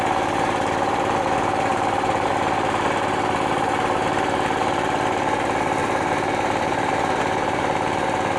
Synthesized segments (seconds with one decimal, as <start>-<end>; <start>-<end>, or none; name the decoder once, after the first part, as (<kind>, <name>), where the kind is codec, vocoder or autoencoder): 1.7-2.3 (vocoder, BigVGAN v2); 5.8-6.9